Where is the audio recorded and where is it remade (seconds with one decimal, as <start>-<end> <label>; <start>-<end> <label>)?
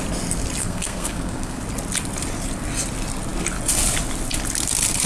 0.0-0.6 recorded; 0.6-1.6 remade; 1.6-5.1 recorded